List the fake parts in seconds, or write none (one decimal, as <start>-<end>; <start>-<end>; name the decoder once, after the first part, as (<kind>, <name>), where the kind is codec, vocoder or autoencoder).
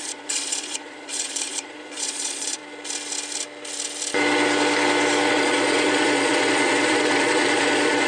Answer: 0.0-2.6 (vocoder, Vocos); 5.3-8.1